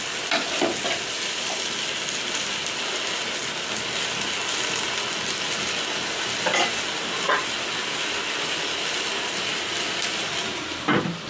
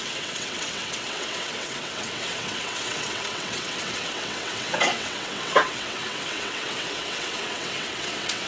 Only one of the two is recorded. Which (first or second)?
first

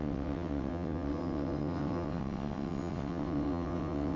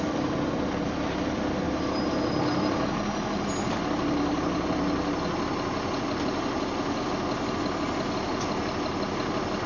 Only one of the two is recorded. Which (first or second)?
second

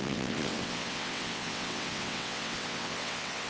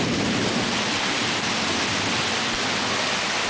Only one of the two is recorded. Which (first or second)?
second